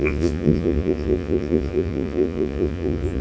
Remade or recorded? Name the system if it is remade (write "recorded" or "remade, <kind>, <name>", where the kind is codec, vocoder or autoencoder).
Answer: remade, vocoder, Vocos